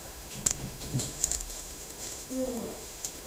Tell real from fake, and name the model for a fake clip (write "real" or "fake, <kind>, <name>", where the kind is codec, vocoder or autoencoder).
fake, autoencoder, DAC-VAE